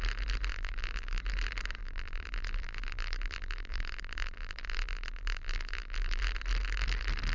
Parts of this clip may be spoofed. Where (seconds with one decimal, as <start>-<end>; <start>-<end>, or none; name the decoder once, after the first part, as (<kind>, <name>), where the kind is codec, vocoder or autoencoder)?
0.5-1.2 (vocoder, BigVGAN v2); 1.8-6.2